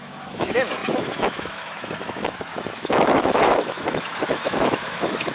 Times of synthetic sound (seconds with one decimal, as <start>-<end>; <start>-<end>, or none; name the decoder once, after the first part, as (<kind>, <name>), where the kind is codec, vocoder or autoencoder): 0.0-5.3 (autoencoder, DAC-VAE)